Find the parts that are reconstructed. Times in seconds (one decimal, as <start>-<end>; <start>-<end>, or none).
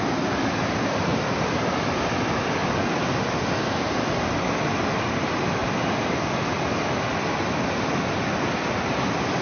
1.1-2.0; 2.6-3.2